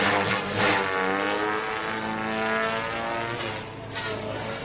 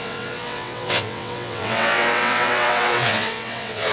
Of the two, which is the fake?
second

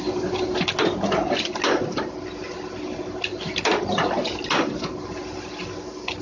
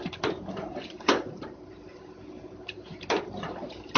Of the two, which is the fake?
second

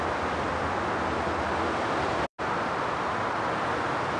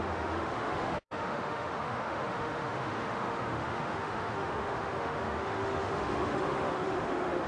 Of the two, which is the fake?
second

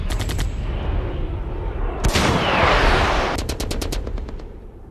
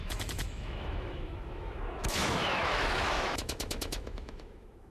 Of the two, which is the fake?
second